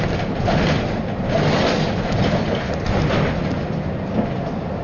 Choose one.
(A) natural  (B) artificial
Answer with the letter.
A